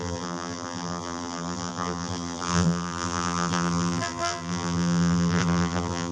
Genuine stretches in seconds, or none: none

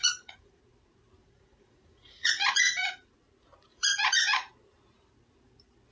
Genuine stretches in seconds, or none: 0.6-1.2; 3.1-3.7; 4.5-5.9

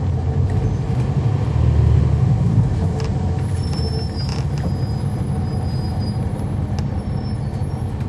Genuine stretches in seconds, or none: 0.0-8.1